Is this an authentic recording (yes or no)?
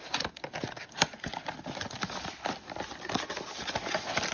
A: yes